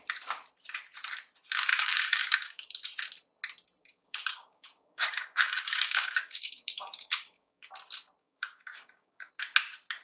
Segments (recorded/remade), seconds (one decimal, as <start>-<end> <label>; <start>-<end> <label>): 0.0-1.7 recorded; 1.7-2.9 remade; 2.9-3.8 recorded; 3.8-7.7 remade; 7.7-8.2 recorded; 8.2-9.3 remade; 9.3-10.0 recorded